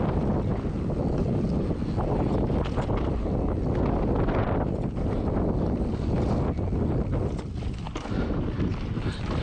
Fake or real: real